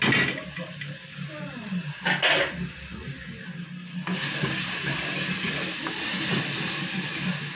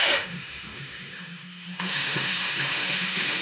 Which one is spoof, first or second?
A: second